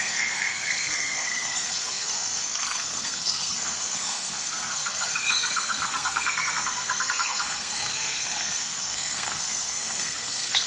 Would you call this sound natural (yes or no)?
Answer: no